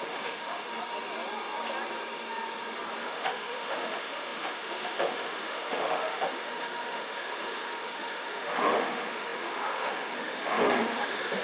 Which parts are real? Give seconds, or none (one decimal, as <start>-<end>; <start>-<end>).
0.7-3.0

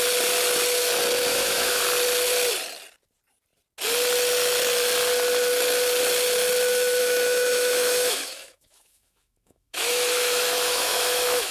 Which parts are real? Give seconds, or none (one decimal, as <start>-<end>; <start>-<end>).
0.0-1.3; 1.8-7.0